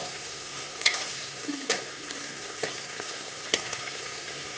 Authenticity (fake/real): fake